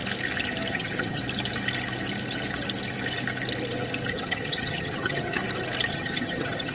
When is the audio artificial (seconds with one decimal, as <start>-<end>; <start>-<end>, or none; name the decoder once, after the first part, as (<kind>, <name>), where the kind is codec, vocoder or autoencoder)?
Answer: 0.7-1.2 (vocoder, HiFi-GAN); 4.1-5.4; 5.9-6.7